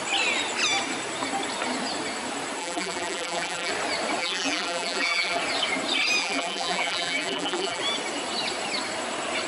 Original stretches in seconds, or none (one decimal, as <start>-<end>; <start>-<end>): 0.0-2.6; 3.7-4.2; 5.4-6.2; 7.8-9.5